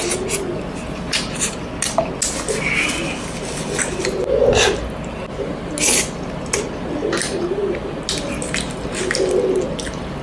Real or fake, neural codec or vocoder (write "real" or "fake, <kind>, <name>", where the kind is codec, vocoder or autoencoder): real